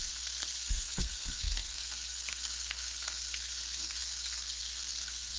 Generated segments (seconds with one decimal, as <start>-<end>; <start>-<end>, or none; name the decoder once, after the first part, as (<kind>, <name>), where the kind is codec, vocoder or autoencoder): 0.0-5.4 (codec, SNAC)